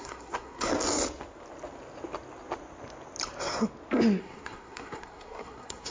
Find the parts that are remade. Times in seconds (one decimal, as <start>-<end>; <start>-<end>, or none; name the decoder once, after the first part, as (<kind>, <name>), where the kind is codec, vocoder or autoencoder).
0.0-0.7 (codec, SNAC); 4.2-5.9